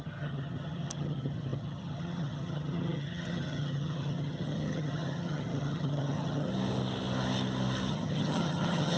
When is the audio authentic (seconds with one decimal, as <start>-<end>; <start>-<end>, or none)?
6.5-7.9